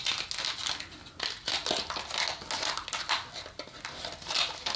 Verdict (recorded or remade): recorded